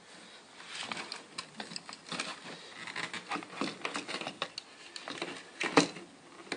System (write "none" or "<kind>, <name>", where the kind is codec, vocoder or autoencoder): none